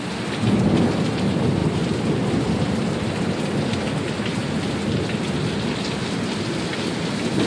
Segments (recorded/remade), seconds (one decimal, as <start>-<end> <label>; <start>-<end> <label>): 0.0-7.5 recorded